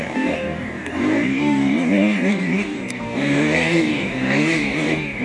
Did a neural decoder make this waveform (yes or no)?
yes